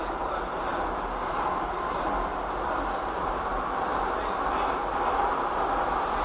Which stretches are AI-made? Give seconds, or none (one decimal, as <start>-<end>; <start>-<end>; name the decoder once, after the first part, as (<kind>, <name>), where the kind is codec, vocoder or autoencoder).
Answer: none

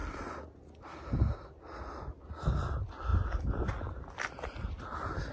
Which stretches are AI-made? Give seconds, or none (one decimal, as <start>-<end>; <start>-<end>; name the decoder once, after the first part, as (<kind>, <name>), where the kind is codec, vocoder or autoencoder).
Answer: none